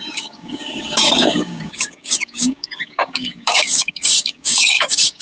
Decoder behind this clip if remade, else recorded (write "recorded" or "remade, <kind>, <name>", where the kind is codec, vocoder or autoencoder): remade, codec, DAC